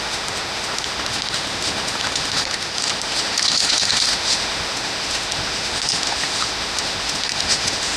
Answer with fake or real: fake